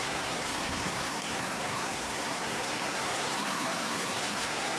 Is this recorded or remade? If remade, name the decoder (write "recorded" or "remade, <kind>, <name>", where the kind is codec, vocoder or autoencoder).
remade, codec, SNAC